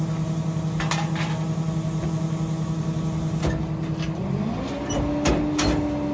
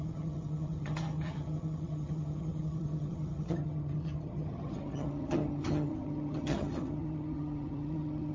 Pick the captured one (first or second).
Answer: first